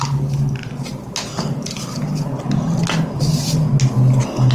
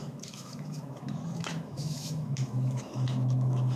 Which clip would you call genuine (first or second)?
first